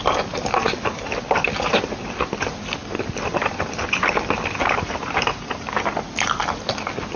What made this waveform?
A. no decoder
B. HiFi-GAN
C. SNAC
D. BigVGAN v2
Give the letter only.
A